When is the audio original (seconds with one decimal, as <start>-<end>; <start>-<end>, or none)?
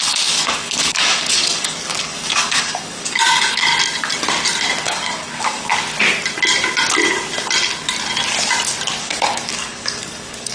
3.7-4.8; 5.7-9.0